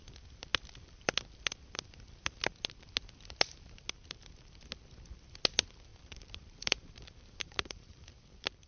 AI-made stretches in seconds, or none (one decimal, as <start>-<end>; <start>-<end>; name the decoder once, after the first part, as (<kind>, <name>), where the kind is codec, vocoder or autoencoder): 5.9-8.1 (vocoder, BigVGAN v2)